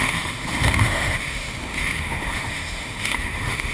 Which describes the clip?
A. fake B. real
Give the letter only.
A